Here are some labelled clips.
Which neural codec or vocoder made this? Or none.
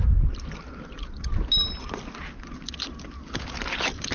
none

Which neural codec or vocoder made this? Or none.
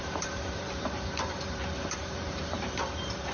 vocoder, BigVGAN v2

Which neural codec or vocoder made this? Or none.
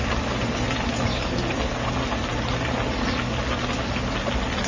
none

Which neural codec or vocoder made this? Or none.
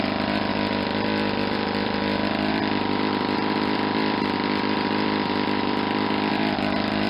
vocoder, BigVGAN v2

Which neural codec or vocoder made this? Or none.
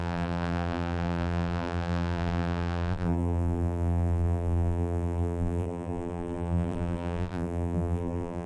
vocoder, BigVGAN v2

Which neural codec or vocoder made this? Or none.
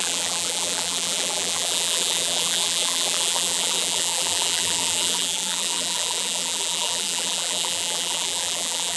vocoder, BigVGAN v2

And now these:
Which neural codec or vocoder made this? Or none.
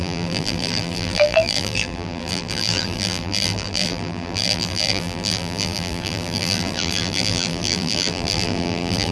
vocoder, BigVGAN v2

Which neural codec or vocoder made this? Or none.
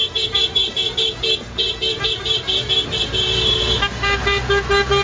vocoder, BigVGAN v2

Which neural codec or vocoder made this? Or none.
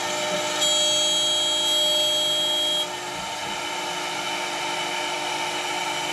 none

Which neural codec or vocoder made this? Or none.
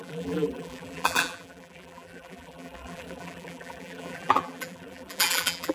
vocoder, BigVGAN v2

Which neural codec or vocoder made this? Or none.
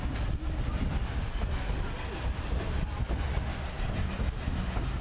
none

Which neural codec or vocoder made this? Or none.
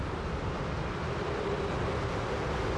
none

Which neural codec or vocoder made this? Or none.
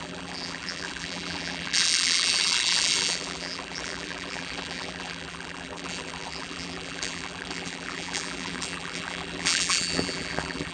vocoder, BigVGAN v2